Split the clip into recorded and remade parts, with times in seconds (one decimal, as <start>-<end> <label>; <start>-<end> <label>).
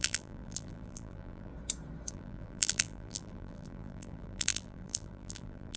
0.0-1.5 remade; 1.5-2.1 recorded; 2.1-5.8 remade